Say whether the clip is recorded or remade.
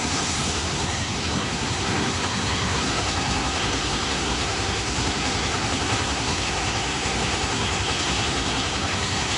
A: remade